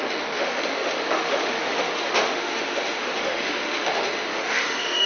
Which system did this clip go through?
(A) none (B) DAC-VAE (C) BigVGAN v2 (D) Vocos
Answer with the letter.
B